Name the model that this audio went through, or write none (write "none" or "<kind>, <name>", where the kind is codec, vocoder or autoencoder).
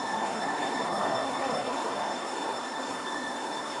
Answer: codec, SNAC